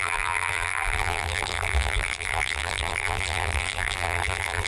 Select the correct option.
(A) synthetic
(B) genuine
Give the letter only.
A